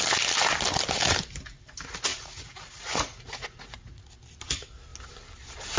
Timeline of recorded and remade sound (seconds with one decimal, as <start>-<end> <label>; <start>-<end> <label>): 0.0-2.1 recorded; 2.1-4.1 remade; 4.1-5.8 recorded